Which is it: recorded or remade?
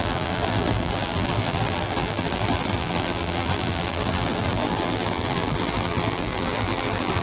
remade